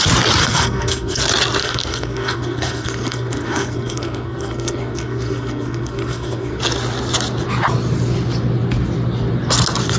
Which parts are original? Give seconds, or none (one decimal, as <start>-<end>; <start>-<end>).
0.0-0.4; 1.2-1.6; 6.6-10.0